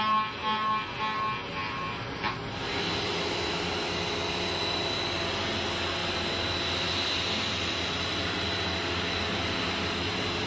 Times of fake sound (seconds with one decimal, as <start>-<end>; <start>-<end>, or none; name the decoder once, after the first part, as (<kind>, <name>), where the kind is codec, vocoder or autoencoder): none